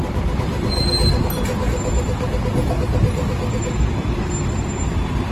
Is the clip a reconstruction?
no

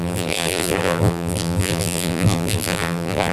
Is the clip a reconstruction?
yes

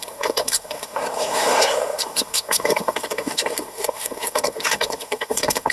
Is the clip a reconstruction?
yes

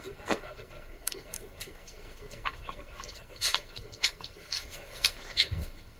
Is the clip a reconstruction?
yes